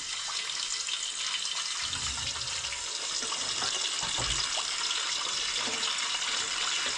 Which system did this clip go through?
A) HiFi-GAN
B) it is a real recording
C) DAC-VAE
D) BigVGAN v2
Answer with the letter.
B